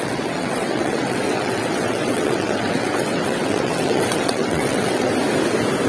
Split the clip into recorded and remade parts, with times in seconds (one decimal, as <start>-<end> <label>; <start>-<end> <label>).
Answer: 0.0-5.1 remade; 5.1-5.9 recorded